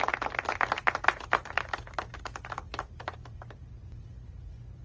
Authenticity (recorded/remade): recorded